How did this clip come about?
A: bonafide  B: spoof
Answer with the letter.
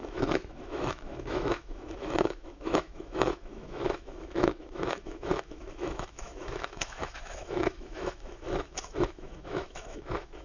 B